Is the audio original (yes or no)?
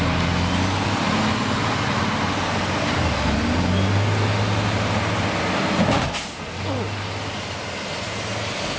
yes